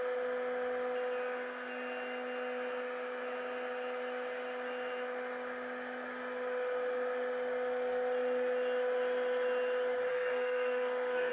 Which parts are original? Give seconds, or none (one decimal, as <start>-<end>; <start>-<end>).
0.0-10.1